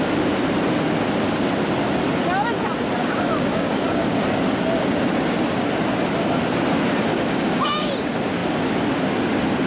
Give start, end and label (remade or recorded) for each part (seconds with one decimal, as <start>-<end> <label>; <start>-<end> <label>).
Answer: 0.0-3.0 recorded; 3.0-4.2 remade; 4.2-7.1 recorded; 7.1-7.9 remade; 7.9-9.7 recorded